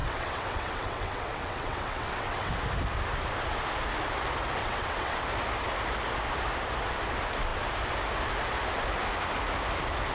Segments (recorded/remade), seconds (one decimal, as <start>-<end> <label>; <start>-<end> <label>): 0.0-2.5 remade; 2.5-4.6 recorded; 4.6-5.2 remade; 5.2-10.1 recorded